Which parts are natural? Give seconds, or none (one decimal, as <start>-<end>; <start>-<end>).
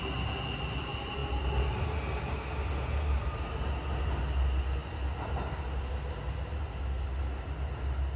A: 0.0-8.2